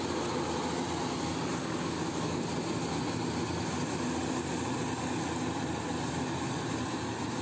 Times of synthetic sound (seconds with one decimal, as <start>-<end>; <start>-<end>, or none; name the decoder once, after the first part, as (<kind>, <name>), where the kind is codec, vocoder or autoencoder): 1.6-2.4 (codec, DAC)